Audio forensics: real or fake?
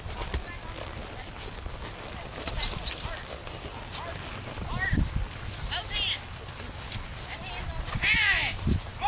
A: real